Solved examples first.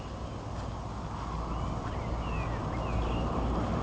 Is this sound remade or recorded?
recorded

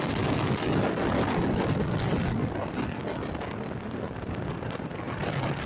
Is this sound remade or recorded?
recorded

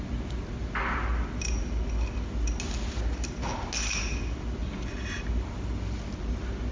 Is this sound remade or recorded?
recorded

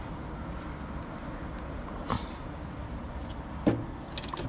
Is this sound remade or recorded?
recorded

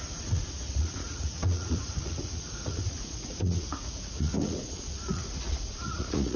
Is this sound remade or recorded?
remade